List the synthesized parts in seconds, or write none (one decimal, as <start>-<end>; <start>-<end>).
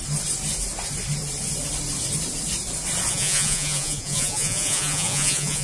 3.1-5.6